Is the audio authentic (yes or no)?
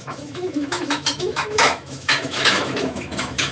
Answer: no